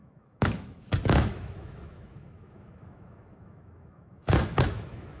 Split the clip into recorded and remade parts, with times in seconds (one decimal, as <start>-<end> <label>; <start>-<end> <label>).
0.0-5.2 remade